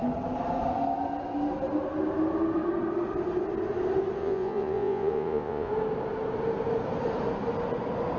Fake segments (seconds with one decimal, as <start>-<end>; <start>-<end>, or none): 4.2-5.7

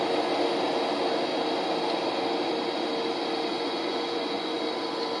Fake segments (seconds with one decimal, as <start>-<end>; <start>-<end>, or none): 3.5-4.6

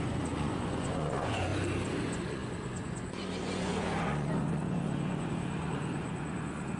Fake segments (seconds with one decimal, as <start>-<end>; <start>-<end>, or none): 0.0-1.5; 2.0-6.8

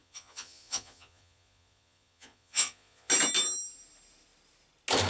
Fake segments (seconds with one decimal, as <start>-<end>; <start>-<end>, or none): 0.0-3.1

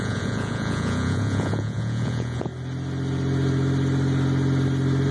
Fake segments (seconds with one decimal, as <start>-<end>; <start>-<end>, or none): 0.0-2.5

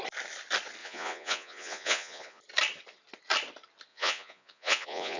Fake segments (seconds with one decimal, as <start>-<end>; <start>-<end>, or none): 0.8-2.4; 3.9-5.2

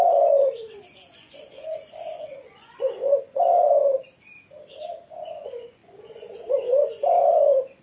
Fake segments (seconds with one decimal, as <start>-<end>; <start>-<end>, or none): 0.0-3.8; 5.2-7.8